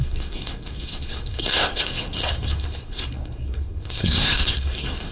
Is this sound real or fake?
fake